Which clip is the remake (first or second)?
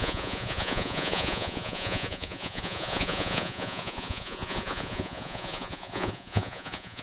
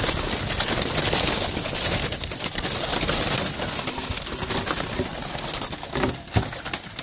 first